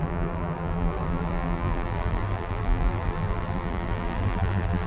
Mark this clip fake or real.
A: fake